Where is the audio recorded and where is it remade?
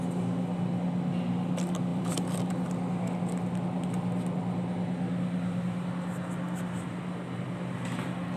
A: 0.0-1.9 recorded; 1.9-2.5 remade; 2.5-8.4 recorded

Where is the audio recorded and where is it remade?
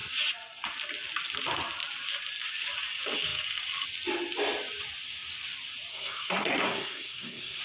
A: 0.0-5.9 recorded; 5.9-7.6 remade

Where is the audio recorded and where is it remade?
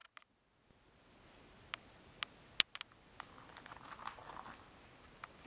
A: 0.0-5.5 recorded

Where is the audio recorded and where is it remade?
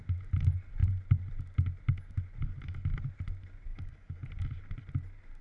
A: 0.0-3.7 recorded; 3.7-4.3 remade; 4.3-5.4 recorded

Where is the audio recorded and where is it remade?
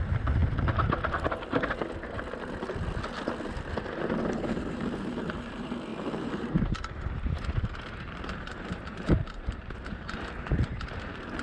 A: 0.0-0.4 remade; 0.4-4.3 recorded; 4.3-11.4 remade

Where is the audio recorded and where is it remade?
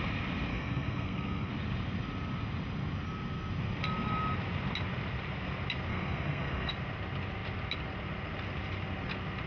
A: 0.0-0.5 recorded; 0.5-1.5 remade; 1.5-5.9 recorded; 5.9-6.7 remade; 6.7-9.5 recorded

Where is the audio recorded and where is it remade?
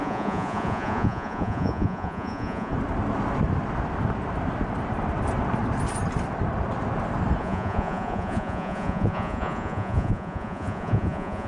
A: 0.0-2.7 remade; 2.7-7.4 recorded; 7.4-11.5 remade